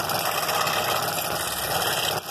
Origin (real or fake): real